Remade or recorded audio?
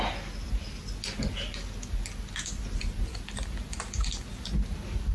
recorded